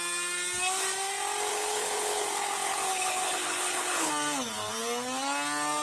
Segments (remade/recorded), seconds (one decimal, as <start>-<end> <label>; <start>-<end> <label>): 0.0-1.5 recorded; 1.5-4.1 remade; 4.1-5.8 recorded

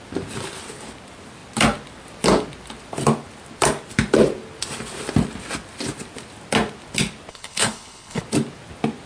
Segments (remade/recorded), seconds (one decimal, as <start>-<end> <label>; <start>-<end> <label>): 0.0-7.3 recorded; 7.3-8.2 remade; 8.2-9.1 recorded

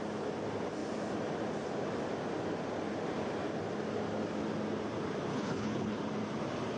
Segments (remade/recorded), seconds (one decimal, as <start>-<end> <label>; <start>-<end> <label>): 0.0-5.3 recorded; 5.3-6.0 remade; 6.0-6.8 recorded